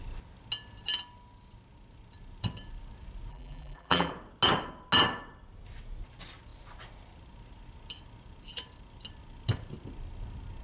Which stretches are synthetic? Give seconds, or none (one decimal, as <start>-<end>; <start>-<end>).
3.3-4.1